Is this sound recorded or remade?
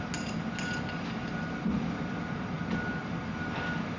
recorded